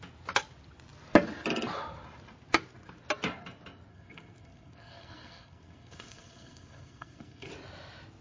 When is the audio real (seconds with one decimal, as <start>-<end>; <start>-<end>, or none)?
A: 0.0-3.9; 7.5-8.2